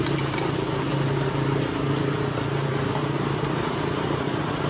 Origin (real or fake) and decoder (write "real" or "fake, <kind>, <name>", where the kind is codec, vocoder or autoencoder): real